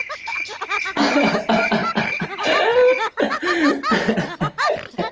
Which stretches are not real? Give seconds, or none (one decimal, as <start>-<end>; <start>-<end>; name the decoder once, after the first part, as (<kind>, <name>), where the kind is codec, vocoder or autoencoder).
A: none